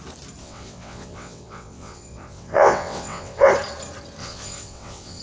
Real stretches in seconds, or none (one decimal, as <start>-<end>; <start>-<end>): 0.0-0.4; 3.5-4.2

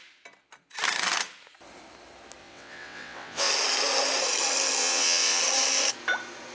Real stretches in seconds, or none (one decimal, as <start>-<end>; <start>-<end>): 0.0-2.4; 3.5-4.8; 5.4-6.5

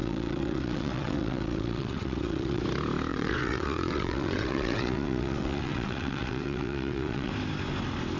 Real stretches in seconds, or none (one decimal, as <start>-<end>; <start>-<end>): 2.6-3.1; 7.3-8.2

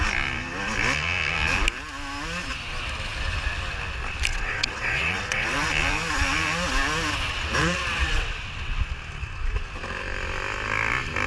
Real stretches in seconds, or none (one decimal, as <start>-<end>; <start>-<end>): 0.0-4.3; 5.7-7.3; 8.8-11.3